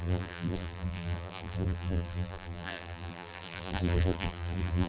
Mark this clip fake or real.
fake